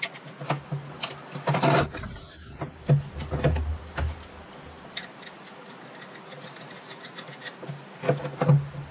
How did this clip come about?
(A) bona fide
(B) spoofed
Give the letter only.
A